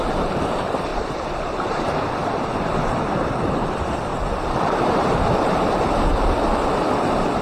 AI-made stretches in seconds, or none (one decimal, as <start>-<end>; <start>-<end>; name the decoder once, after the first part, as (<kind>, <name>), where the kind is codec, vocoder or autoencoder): 0.9-1.4 (vocoder, BigVGAN v2)